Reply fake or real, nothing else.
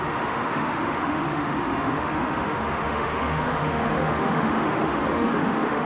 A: fake